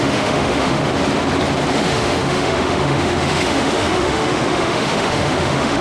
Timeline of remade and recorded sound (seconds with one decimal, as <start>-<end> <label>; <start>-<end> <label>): 0.0-0.9 remade; 0.9-1.7 recorded; 1.7-5.8 remade